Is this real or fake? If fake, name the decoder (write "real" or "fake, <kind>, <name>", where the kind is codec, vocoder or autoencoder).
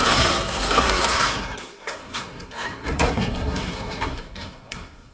fake, codec, SNAC